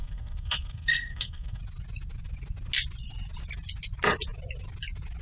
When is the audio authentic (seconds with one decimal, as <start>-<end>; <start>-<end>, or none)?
1.6-5.2